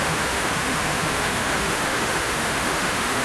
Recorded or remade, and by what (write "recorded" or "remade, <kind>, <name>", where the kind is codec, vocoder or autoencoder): remade, autoencoder, DAC-VAE